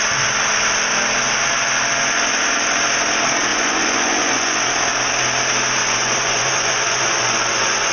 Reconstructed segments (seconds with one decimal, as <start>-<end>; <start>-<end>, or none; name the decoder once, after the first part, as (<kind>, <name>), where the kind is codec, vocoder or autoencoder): 3.5-4.6 (vocoder, Vocos); 5.8-7.9